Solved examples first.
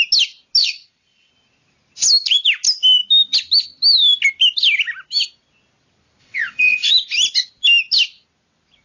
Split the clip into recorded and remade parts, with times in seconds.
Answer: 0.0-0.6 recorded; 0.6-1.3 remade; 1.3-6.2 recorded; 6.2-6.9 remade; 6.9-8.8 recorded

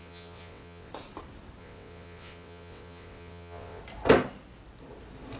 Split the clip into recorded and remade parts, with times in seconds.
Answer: 0.0-0.9 remade; 0.9-1.6 recorded; 1.6-3.8 remade; 3.8-5.4 recorded

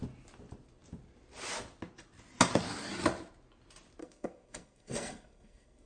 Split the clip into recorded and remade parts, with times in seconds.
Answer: 0.0-4.0 recorded; 4.0-5.9 remade

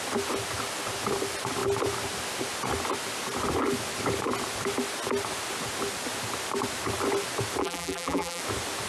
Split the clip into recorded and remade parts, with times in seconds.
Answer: 0.0-7.6 recorded; 7.6-8.4 remade; 8.4-8.9 recorded